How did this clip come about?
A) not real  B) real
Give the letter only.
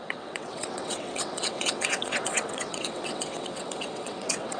A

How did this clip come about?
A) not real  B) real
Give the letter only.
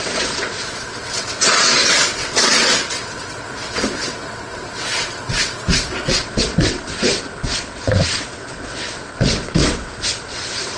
A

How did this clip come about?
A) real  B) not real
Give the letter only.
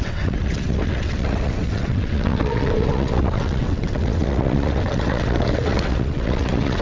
B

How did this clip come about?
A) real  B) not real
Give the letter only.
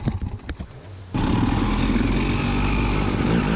A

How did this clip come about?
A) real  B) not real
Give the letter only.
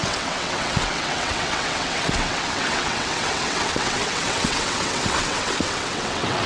B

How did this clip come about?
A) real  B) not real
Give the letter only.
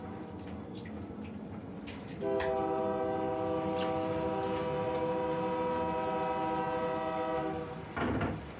A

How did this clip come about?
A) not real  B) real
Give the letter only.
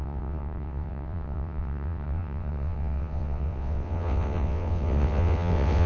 A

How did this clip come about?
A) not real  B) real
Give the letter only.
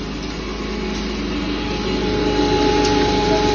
B